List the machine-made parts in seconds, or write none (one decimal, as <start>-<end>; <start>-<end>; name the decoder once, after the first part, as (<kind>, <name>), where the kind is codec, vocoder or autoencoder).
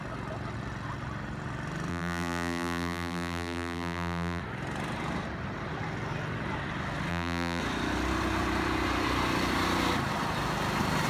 1.9-4.4 (vocoder, BigVGAN v2); 7.1-7.6